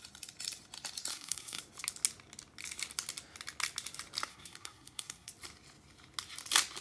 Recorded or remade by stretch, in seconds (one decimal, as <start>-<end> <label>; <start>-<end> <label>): 0.0-1.1 recorded; 1.1-1.6 remade; 1.6-4.3 recorded; 4.3-5.3 remade; 5.3-6.8 recorded